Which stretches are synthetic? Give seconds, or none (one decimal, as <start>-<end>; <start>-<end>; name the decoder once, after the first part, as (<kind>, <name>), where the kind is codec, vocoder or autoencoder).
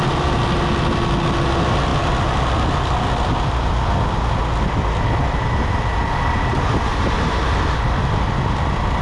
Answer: 6.9-7.6 (vocoder, BigVGAN v2)